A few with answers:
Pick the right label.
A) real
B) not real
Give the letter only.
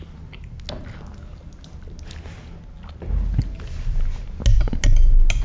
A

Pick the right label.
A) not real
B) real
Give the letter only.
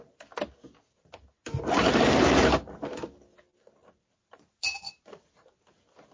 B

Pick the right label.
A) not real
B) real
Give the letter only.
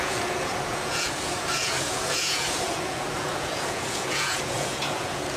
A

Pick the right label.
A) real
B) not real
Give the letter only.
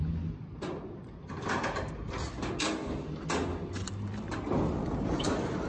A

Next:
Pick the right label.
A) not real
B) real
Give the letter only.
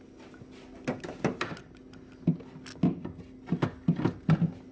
B